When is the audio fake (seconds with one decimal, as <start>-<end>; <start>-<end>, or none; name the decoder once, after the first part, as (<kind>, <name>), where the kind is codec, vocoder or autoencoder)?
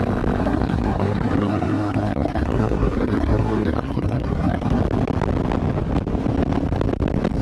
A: 0.4-4.8 (codec, SNAC)